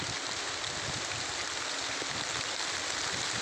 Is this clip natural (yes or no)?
yes